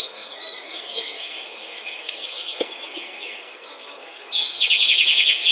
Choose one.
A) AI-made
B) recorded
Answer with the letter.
A